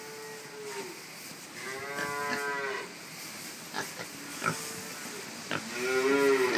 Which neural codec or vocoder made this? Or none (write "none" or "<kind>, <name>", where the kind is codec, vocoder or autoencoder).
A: none